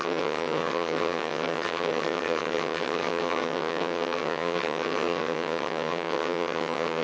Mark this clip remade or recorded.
remade